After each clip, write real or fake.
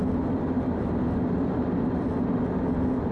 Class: real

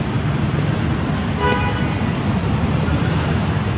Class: real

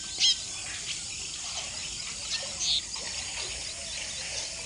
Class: real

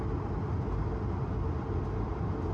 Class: real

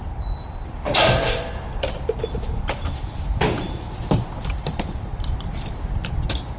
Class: fake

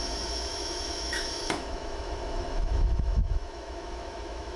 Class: fake